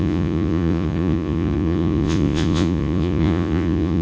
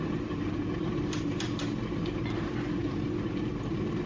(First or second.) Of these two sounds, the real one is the second